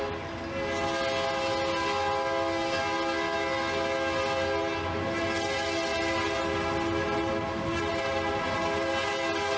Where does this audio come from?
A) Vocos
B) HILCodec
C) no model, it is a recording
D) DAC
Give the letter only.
C